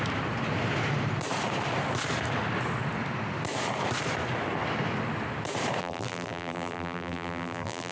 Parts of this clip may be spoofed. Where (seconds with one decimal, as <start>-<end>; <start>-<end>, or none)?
5.8-7.9